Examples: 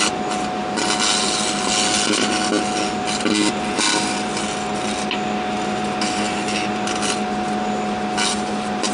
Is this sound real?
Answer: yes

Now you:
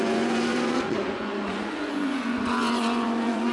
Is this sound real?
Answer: no